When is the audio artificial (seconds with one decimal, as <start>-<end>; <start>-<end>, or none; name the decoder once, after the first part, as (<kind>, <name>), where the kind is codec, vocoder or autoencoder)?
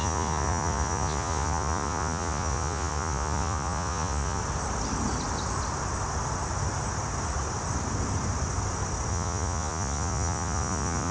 0.0-4.4 (vocoder, Vocos); 9.1-11.1